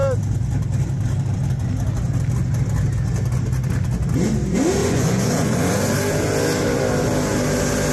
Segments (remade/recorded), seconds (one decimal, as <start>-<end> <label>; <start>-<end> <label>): 0.0-4.8 recorded; 4.8-5.7 remade; 5.7-7.9 recorded